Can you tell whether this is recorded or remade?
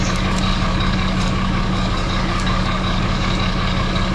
remade